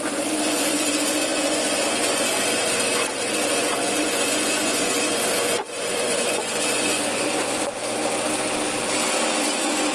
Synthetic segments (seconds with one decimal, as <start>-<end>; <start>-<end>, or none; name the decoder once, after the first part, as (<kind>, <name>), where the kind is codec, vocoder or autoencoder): 0.0-7.8 (vocoder, Vocos); 9.4-9.9